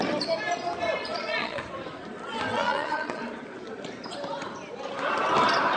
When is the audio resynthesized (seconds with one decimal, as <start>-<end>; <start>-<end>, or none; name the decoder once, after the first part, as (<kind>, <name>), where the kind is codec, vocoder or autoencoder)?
1.0-1.6 (vocoder, Vocos); 2.5-3.2